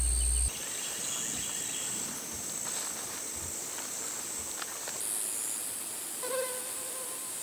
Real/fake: real